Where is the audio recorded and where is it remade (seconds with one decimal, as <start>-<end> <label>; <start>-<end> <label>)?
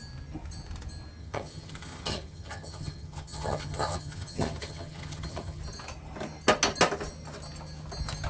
0.0-1.2 recorded; 1.2-5.6 remade; 5.6-8.3 recorded